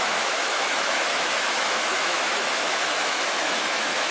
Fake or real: fake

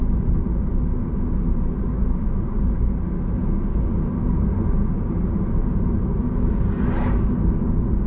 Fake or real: real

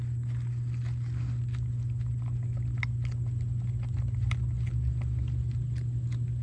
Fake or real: real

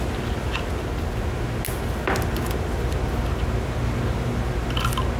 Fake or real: real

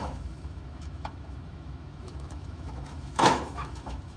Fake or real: fake